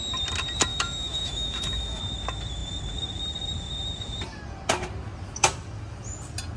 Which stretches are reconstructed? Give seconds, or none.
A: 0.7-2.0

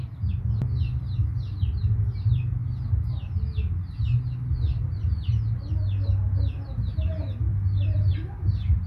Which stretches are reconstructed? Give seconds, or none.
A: none

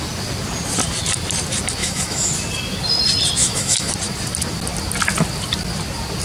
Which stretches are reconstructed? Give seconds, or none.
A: 1.8-2.3; 3.4-3.9

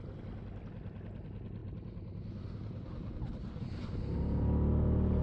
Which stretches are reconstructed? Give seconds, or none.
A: none

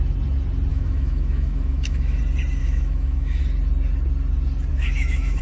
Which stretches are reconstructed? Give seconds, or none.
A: 0.7-2.2; 2.6-3.4; 4.7-5.4

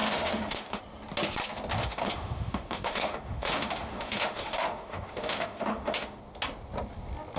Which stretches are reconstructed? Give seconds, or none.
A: 0.0-0.8; 1.8-6.2

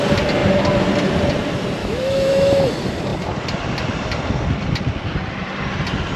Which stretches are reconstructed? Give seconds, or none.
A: 1.8-2.7

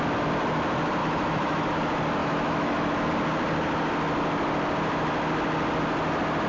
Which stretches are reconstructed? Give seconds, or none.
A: 1.0-1.7; 2.2-3.1